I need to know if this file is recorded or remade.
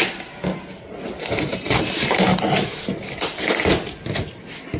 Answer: recorded